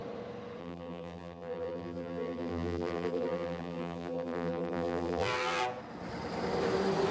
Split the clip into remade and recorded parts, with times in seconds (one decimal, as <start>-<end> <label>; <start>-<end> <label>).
0.0-0.6 recorded; 0.6-5.6 remade; 5.6-7.1 recorded